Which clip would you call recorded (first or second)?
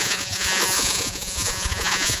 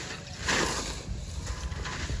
second